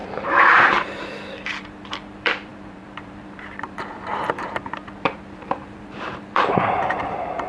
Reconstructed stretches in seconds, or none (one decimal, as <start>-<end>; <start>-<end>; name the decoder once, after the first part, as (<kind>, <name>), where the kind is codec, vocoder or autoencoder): 0.0-7.5 (vocoder, BigVGAN v2)